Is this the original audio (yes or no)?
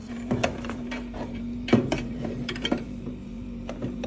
no